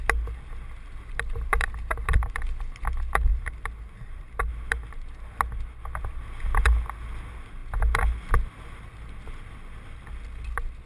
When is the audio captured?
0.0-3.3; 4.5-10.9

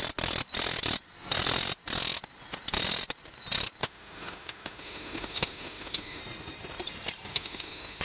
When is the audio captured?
0.0-3.8; 6.2-7.3

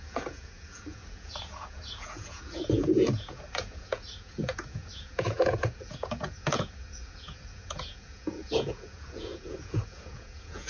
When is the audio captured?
none

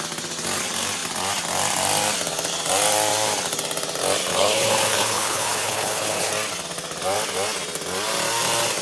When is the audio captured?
0.0-4.3; 6.3-8.8

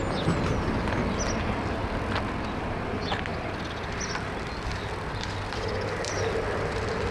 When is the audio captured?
0.0-7.1

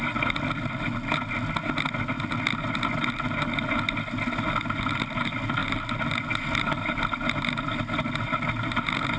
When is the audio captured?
0.0-9.2

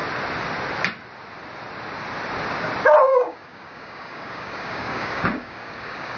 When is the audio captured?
0.0-3.1